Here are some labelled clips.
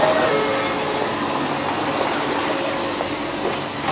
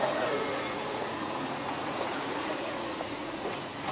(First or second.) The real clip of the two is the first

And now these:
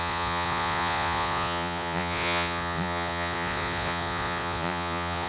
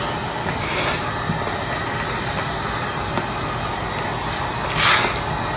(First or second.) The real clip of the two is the second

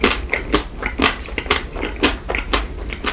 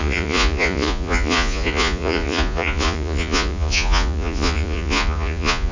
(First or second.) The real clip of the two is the first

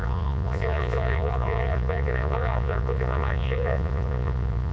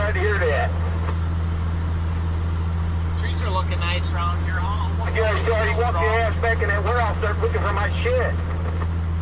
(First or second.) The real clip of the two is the second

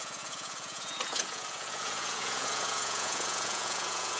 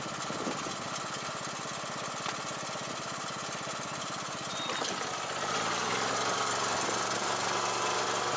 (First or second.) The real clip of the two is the second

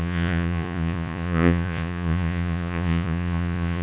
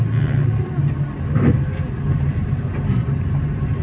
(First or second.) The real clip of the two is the second